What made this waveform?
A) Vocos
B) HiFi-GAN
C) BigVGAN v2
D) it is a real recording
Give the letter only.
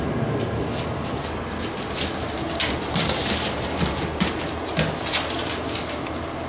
D